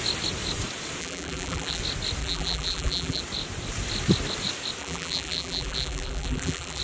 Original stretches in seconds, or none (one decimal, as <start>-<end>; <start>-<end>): 0.0-1.0; 1.8-2.2; 3.2-4.8